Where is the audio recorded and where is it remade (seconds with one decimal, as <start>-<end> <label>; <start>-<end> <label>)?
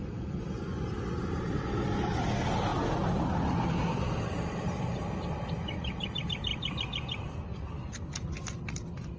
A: 0.0-9.2 recorded